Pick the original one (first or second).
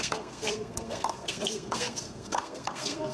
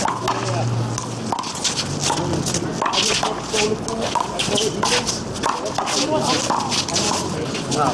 second